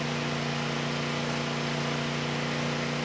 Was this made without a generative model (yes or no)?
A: yes